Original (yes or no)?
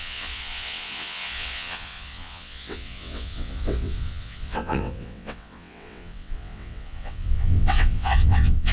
no